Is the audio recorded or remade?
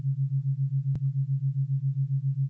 recorded